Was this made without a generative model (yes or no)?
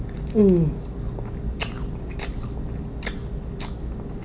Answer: yes